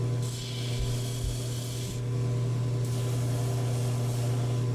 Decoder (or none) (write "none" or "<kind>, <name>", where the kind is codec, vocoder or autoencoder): none